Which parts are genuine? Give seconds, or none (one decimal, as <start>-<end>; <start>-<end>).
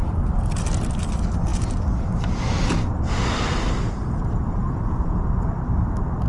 0.0-6.3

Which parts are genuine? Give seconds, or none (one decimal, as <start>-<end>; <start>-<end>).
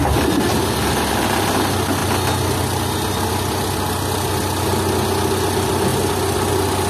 0.0-6.9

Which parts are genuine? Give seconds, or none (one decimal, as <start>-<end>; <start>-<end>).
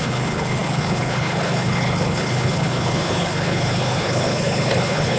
none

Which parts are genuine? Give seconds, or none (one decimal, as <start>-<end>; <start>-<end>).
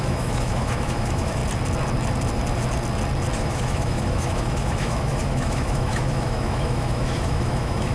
1.4-3.4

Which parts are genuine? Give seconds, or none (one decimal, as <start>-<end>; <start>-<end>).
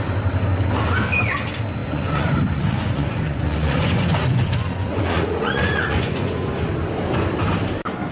0.0-1.8; 6.7-8.1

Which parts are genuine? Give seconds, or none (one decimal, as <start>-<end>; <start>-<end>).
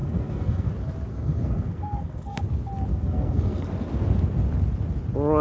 0.7-1.1; 2.4-2.9; 3.7-5.4